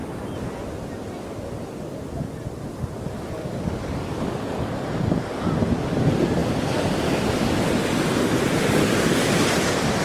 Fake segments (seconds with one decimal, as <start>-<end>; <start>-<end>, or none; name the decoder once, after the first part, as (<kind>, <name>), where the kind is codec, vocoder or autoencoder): none